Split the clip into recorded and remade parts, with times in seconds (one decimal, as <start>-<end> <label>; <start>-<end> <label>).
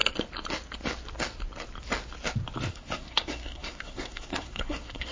0.0-2.7 recorded; 2.7-5.1 remade